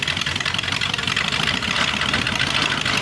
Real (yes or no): yes